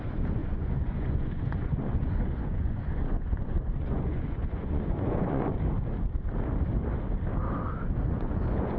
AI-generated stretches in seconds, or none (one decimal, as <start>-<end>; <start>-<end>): 0.0-5.5; 8.1-8.8